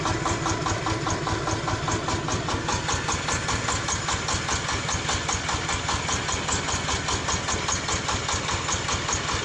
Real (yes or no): yes